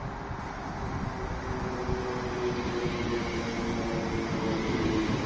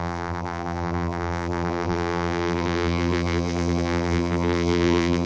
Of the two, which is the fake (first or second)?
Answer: second